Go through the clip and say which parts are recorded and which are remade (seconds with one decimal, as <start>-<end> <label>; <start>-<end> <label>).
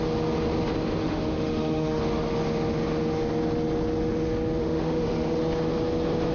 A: 0.0-1.0 recorded; 1.0-2.0 remade; 2.0-4.6 recorded; 4.6-5.4 remade; 5.4-6.3 recorded